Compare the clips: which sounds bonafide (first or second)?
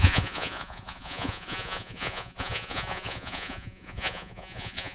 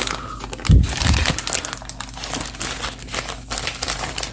second